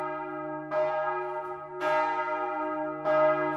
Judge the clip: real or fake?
real